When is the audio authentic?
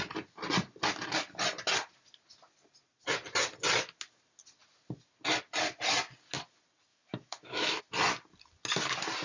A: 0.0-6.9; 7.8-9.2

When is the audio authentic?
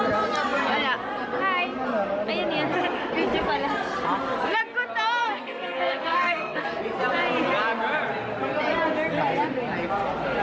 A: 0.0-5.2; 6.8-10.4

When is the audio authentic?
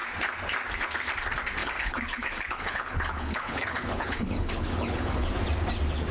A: 0.0-1.6; 5.3-6.1